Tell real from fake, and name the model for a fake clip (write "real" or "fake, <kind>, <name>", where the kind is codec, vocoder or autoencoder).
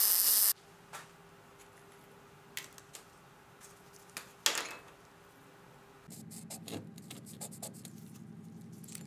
real